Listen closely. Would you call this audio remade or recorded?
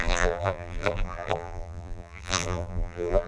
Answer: remade